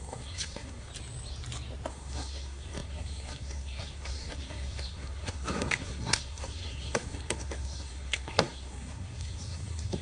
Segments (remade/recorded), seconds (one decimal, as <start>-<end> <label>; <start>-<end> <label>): 0.0-0.9 remade; 0.9-1.9 recorded; 1.9-10.0 remade